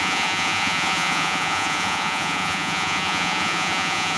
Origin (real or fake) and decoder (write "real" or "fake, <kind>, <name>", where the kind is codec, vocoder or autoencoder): fake, vocoder, Vocos